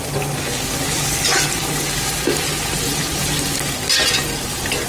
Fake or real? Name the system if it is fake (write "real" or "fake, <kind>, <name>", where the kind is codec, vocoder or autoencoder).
real